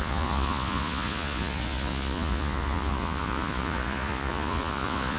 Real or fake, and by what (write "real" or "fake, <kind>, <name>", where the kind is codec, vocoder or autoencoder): fake, vocoder, Vocos